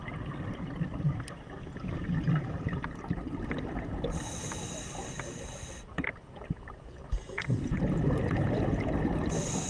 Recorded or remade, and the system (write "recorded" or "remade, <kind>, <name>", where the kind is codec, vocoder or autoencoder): recorded